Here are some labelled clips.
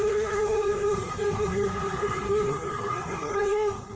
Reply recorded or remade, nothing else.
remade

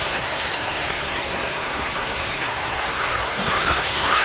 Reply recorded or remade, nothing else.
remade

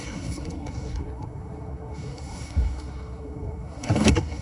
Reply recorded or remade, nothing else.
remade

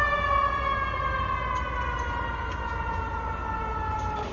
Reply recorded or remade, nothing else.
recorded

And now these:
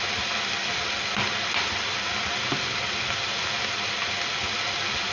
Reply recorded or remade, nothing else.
recorded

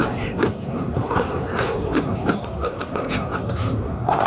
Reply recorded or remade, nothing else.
remade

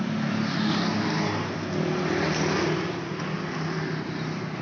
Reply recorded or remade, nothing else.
recorded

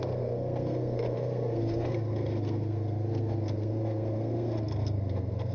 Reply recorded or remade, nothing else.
remade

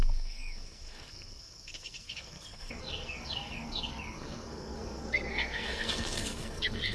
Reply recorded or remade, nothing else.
remade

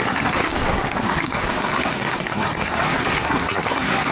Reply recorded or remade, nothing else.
remade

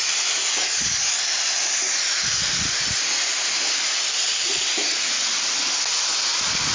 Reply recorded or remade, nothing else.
recorded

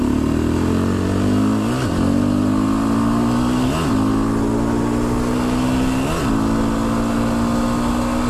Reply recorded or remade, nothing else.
recorded